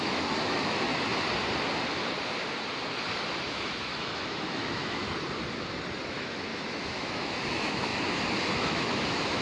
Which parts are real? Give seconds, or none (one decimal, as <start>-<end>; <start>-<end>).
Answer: 0.9-3.4; 5.0-6.1; 7.9-8.5